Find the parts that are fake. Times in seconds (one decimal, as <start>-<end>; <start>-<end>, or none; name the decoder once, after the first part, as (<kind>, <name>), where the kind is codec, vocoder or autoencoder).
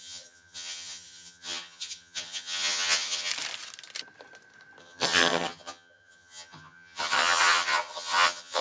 0.0-3.3 (vocoder, HiFi-GAN); 4.8-8.6